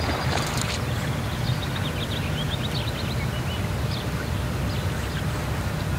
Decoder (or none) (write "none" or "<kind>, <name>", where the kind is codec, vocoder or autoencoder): none